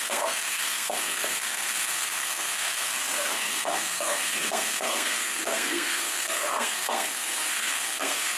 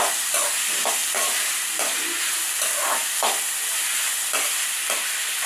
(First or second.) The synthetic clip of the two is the first